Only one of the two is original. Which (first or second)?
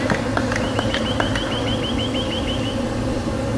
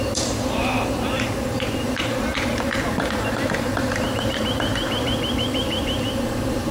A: first